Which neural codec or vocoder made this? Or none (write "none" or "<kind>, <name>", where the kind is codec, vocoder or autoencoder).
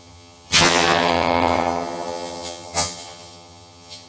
vocoder, HiFi-GAN